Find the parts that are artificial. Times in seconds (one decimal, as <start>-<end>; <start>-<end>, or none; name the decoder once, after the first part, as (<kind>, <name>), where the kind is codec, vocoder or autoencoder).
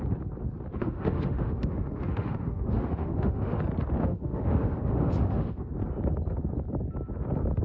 0.7-3.6 (autoencoder, DAC-VAE); 4.0-5.7